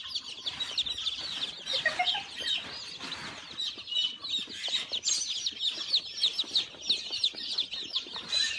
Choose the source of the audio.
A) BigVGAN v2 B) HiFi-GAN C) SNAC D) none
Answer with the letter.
D